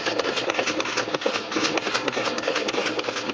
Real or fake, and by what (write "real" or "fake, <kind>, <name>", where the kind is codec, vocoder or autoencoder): fake, codec, SNAC